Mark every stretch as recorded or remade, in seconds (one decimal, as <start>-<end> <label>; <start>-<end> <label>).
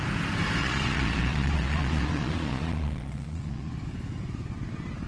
0.0-0.6 recorded; 0.6-3.7 remade; 3.7-5.1 recorded